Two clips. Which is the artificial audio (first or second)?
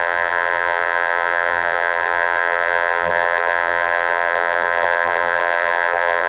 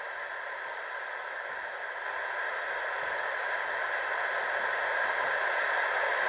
first